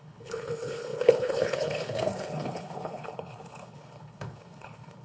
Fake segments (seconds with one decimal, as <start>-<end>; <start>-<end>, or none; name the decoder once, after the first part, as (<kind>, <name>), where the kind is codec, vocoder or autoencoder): 0.0-5.0 (codec, HILCodec)